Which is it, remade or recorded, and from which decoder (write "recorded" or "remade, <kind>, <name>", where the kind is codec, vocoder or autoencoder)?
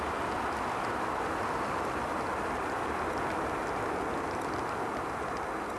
recorded